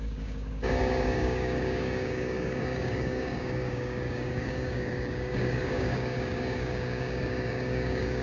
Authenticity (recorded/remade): remade